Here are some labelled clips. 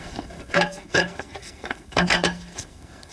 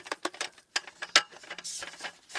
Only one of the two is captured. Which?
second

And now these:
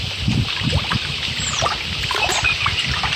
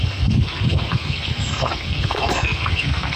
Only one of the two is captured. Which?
first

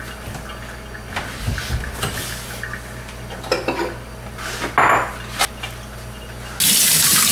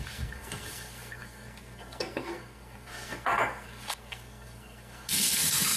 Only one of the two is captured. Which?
first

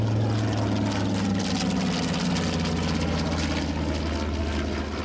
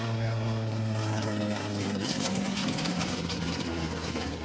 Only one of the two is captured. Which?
first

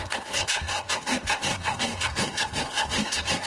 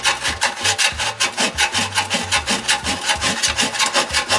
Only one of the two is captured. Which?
second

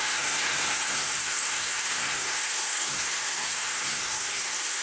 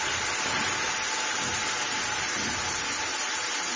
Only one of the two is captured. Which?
second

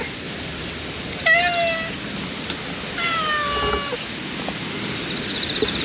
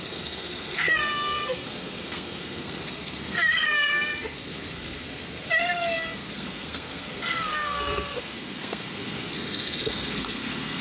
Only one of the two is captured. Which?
first